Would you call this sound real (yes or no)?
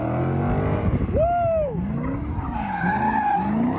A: yes